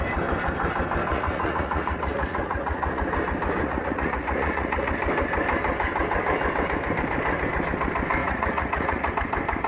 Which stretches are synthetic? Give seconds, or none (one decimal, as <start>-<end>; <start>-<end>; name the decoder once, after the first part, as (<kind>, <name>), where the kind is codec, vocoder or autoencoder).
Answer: 1.1-3.0 (vocoder, Vocos); 3.6-4.9; 8.2-9.1